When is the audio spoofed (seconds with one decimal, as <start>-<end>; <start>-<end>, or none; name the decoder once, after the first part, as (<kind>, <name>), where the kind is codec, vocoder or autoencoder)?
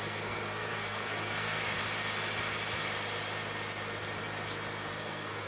0.0-1.6 (codec, SNAC); 4.9-5.5